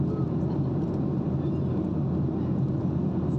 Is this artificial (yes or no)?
no